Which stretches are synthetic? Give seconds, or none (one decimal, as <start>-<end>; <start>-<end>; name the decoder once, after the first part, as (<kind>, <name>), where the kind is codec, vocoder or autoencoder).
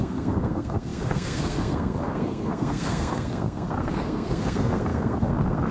0.0-5.7 (codec, SNAC)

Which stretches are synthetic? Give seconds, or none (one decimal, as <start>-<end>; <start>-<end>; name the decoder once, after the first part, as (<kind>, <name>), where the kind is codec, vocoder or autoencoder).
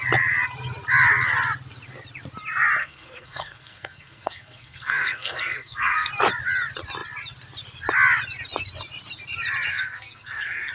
2.8-6.1 (codec, SNAC); 9.7-10.7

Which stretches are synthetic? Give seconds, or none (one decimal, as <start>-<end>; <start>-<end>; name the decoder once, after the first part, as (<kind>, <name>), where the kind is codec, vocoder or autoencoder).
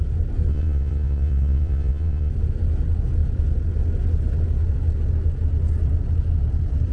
0.5-2.3 (vocoder, Vocos)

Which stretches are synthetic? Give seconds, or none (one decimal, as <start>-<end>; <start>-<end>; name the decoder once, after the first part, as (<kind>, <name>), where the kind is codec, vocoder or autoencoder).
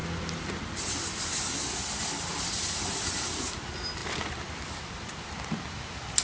none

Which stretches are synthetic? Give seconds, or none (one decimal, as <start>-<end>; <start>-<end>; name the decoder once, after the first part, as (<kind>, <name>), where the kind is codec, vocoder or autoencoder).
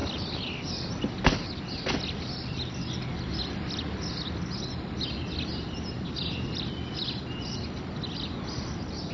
none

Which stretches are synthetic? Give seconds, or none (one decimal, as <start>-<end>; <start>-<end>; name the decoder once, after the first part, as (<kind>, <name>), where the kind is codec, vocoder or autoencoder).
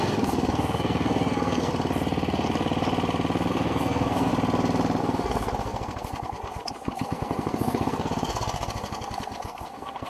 0.0-1.7 (codec, SNAC); 3.5-4.3; 5.0-10.1